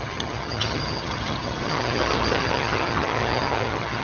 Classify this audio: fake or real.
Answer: fake